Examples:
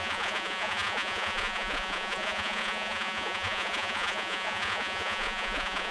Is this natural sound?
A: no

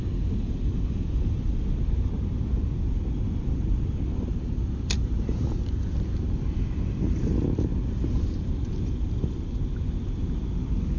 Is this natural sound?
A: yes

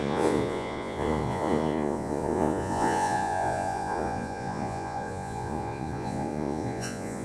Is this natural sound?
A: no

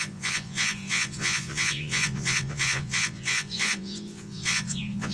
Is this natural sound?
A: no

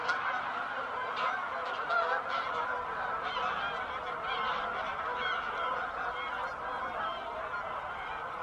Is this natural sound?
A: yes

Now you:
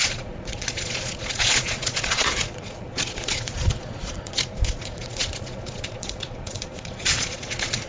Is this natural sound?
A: no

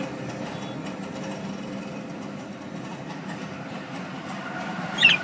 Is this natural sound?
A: yes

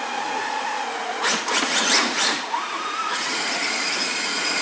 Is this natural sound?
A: no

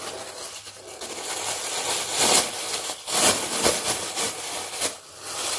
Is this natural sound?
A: yes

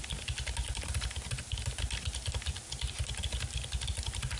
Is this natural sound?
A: yes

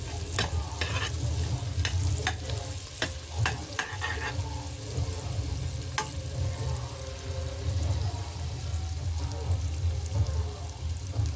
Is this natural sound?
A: yes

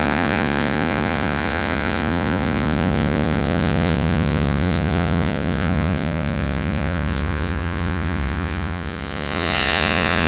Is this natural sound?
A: no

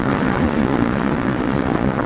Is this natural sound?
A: no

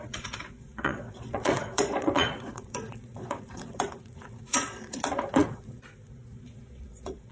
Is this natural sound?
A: no